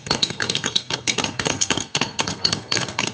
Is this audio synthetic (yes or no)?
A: yes